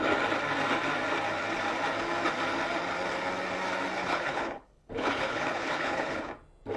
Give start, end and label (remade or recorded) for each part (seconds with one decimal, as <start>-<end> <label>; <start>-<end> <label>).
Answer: 0.0-4.0 recorded; 4.0-6.3 remade; 6.3-6.8 recorded

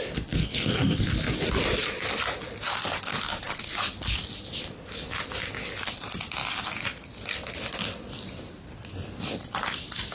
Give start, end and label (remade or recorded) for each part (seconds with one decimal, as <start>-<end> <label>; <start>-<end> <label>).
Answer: 0.0-10.1 recorded

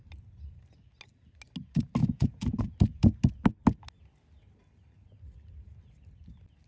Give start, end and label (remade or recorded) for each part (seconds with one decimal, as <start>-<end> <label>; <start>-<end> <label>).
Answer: 0.0-2.0 recorded; 2.0-2.6 remade; 2.6-6.7 recorded